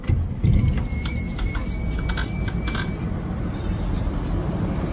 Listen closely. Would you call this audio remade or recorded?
recorded